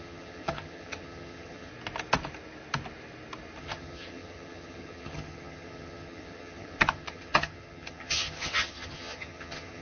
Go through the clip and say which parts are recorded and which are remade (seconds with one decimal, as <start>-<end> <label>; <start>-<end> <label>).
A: 0.0-1.7 remade; 1.7-3.6 recorded; 3.6-9.8 remade